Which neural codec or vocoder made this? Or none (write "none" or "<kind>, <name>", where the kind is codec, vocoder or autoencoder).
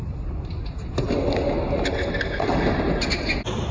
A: none